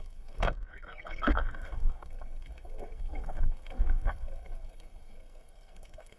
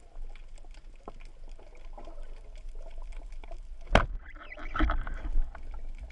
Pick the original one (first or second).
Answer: second